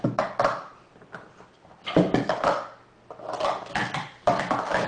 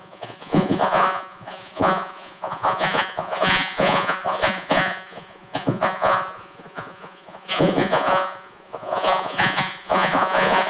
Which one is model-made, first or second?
second